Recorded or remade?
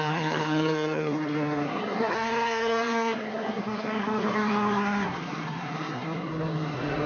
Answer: remade